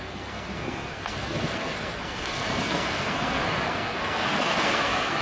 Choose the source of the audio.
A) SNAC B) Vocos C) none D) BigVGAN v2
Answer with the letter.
A